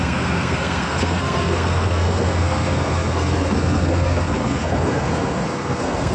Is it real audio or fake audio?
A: fake